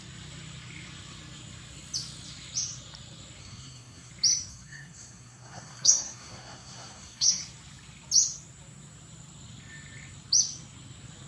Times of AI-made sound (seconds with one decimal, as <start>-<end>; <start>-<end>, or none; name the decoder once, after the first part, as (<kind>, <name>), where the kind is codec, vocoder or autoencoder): 3.4-4.1 (codec, SNAC); 4.5-7.4